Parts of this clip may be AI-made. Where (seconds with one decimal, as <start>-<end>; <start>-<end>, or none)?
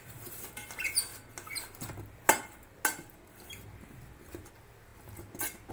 none